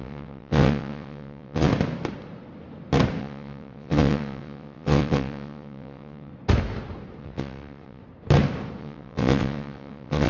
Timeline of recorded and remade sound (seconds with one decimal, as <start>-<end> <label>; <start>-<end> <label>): 0.0-1.7 remade; 1.7-3.2 recorded; 3.2-6.3 remade; 6.3-7.2 recorded; 7.2-8.0 remade; 8.0-8.8 recorded; 8.8-10.3 remade